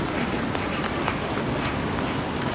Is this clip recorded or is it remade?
recorded